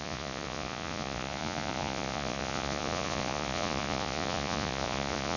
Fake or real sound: fake